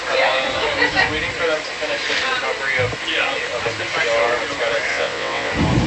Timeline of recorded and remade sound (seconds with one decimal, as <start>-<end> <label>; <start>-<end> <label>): 0.0-4.9 recorded; 4.9-5.5 remade; 5.5-5.9 recorded